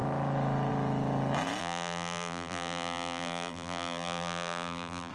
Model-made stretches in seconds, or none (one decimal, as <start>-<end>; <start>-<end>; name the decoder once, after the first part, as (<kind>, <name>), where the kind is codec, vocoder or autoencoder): 1.6-5.1 (vocoder, BigVGAN v2)